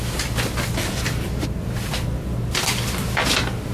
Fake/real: real